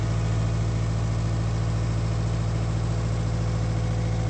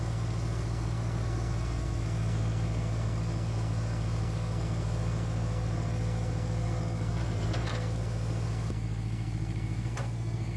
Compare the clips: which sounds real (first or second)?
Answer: first